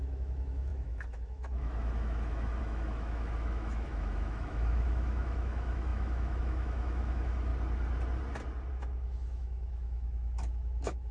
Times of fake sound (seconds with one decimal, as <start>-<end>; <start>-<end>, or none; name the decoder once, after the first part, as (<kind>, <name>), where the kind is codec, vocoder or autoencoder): 0.0-7.5 (autoencoder, DAC-VAE); 8.7-11.1